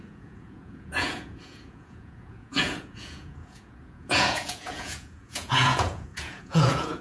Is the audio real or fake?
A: fake